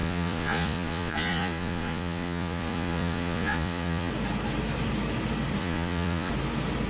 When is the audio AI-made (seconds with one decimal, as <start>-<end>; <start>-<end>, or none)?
0.0-4.1; 5.6-6.3